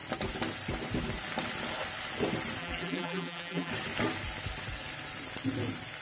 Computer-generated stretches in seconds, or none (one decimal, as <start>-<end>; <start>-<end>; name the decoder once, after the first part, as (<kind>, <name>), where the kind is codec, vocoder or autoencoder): 2.6-3.7 (vocoder, BigVGAN v2)